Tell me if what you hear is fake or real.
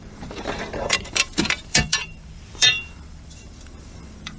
fake